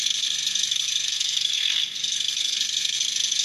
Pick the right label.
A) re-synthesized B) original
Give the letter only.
A